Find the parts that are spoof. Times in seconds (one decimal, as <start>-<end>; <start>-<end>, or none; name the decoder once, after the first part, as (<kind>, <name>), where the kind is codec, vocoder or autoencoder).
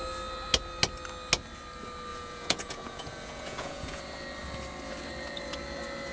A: 2.1-4.0 (vocoder, Vocos)